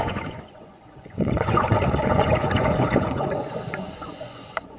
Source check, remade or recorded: remade